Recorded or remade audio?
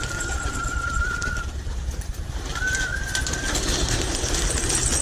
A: recorded